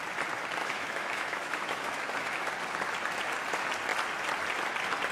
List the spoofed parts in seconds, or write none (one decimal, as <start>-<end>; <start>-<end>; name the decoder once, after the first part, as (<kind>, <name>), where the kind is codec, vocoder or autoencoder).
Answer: 0.6-2.5 (autoencoder, DAC-VAE)